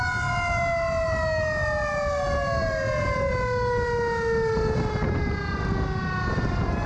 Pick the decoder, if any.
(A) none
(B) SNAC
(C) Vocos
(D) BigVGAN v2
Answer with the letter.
A